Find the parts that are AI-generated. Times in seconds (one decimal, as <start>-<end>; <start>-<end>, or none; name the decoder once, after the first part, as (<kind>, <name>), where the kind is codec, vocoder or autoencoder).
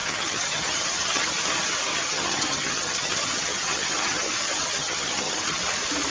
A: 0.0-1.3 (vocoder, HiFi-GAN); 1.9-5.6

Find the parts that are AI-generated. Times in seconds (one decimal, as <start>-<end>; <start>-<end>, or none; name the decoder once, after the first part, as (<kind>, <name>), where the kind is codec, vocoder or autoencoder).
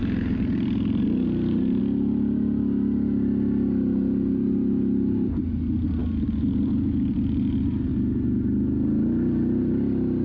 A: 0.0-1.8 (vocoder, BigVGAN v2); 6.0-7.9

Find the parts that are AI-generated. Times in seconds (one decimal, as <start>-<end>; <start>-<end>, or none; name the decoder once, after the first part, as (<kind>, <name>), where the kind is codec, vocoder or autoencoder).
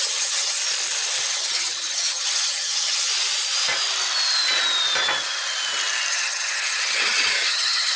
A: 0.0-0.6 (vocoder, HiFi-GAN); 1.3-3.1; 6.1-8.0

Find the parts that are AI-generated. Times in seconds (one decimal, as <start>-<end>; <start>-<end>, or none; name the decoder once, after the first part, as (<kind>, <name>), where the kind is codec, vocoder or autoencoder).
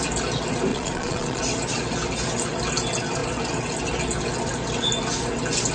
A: 0.7-1.4 (vocoder, Vocos)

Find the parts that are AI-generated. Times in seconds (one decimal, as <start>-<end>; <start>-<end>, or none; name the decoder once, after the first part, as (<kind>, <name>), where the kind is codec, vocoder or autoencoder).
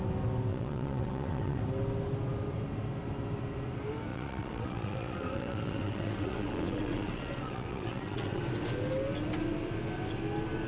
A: 0.5-1.6 (vocoder, WaveNeXt); 4.1-8.4